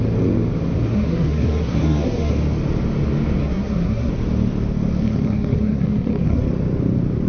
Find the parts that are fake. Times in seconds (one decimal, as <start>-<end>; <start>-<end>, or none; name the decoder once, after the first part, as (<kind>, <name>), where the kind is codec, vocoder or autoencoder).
0.9-2.3 (codec, SNAC); 3.4-4.1; 5.0-6.4